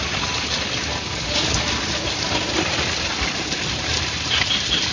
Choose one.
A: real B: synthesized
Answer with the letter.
A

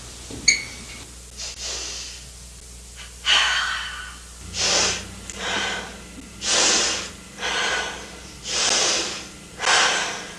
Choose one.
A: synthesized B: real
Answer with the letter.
B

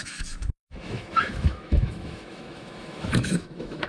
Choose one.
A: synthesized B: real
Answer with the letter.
A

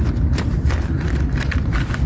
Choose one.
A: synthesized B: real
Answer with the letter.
A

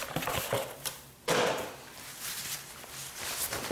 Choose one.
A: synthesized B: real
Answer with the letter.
A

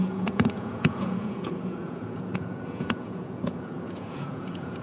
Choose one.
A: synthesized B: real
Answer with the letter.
A